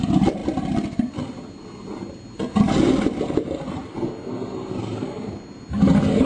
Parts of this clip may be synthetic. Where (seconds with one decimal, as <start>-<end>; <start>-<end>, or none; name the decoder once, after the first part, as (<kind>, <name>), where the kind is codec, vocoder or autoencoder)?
none